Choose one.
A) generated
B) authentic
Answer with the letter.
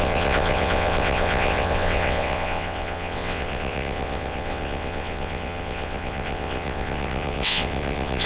A